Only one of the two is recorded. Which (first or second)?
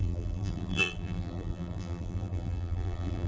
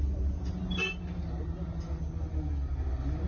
second